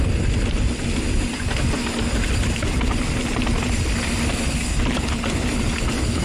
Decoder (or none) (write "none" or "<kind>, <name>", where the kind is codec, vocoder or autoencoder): none